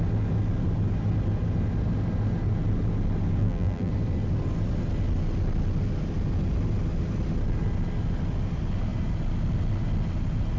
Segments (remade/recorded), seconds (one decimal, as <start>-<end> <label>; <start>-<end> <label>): 0.0-3.4 recorded; 3.4-3.9 remade; 3.9-10.6 recorded